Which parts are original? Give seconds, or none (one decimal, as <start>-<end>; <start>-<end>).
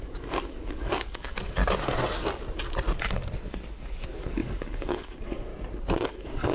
1.6-3.7; 5.5-6.0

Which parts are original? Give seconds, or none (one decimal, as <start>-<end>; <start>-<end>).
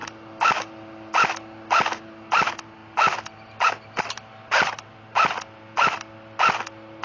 0.0-7.0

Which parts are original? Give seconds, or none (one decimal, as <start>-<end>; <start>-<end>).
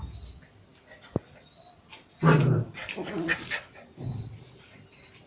0.0-5.3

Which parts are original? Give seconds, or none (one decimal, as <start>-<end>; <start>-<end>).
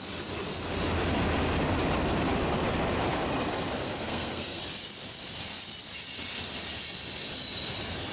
0.0-3.8; 4.6-8.1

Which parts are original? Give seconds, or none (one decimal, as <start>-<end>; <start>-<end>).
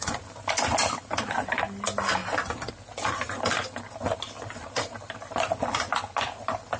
0.0-6.8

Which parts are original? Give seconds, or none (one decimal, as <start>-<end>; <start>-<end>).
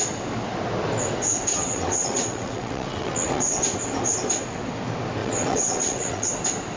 0.0-1.5; 3.6-5.2; 6.3-6.8